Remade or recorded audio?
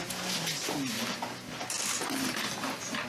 recorded